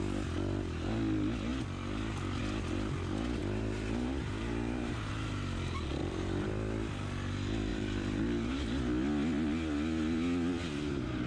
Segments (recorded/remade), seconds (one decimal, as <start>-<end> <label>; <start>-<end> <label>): 0.0-3.4 recorded; 3.4-5.1 remade; 5.1-6.0 recorded; 6.0-6.5 remade; 6.5-7.7 recorded; 7.7-8.8 remade; 8.8-11.3 recorded